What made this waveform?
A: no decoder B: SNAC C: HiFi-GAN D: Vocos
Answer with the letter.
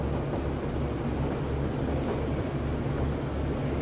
A